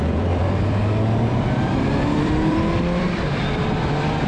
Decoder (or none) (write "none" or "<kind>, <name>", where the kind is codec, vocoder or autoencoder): vocoder, BigVGAN v2